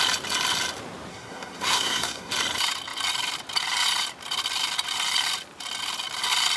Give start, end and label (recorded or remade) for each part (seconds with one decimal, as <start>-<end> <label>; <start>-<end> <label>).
0.0-1.1 recorded; 1.1-2.3 remade; 2.3-6.6 recorded